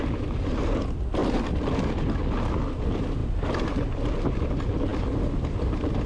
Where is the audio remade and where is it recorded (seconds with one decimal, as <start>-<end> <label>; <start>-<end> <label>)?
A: 0.0-3.2 recorded; 3.2-4.5 remade; 4.5-6.1 recorded

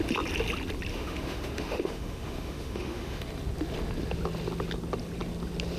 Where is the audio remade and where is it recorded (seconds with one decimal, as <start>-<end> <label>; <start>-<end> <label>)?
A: 0.0-0.9 recorded; 0.9-3.2 remade; 3.2-5.8 recorded

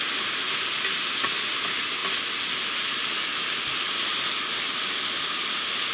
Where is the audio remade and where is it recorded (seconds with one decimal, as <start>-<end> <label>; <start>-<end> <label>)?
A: 0.0-5.9 recorded

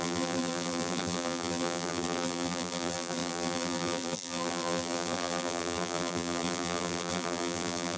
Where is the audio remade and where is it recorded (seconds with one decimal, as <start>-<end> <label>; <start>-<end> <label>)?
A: 0.0-8.0 remade

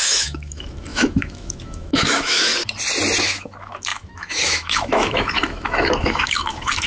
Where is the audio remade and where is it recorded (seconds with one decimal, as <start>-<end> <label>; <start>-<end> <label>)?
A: 0.0-2.5 remade; 2.5-3.2 recorded; 3.2-6.9 remade

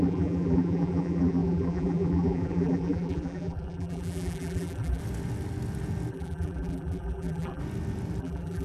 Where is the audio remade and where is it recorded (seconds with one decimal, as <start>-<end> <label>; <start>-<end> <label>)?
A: 0.0-5.0 remade; 5.0-6.1 recorded; 6.1-7.6 remade; 7.6-8.2 recorded; 8.2-8.6 remade

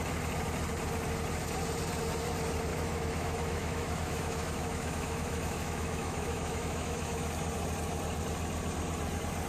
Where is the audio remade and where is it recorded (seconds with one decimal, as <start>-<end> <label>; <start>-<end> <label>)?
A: 0.0-2.7 recorded; 2.7-7.3 remade; 7.3-9.5 recorded

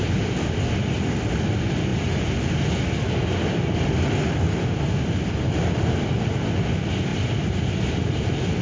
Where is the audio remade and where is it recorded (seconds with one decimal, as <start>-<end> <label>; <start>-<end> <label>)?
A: 0.0-8.6 recorded